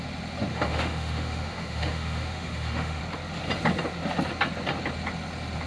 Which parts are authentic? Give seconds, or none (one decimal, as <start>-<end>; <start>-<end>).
0.0-0.5; 3.0-5.7